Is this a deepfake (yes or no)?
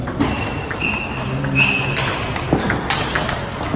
no